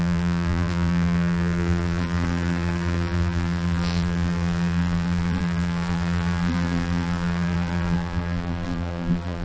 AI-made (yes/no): yes